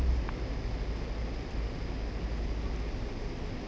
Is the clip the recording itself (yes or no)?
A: yes